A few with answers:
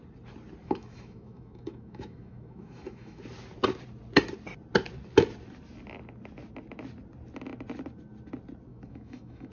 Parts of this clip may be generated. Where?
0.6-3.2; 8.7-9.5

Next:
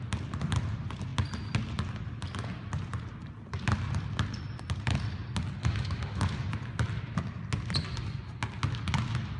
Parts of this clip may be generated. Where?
5.6-6.2

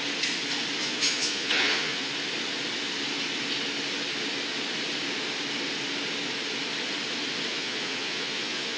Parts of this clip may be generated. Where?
0.8-2.1; 7.5-8.8

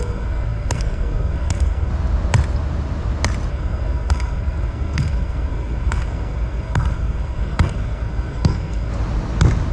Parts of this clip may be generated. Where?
0.0-1.9; 3.5-8.9

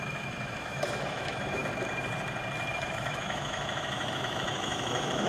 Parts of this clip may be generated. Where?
0.0-1.6; 2.7-5.3

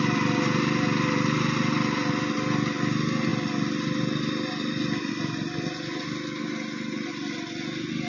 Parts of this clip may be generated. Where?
none

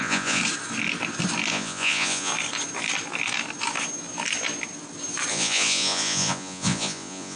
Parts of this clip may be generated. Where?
0.0-0.4; 1.5-2.3; 5.3-7.4